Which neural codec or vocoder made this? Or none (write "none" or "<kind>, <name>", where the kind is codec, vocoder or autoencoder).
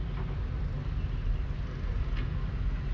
none